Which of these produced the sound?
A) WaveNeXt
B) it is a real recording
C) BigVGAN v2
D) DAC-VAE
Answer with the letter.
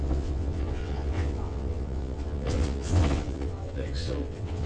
A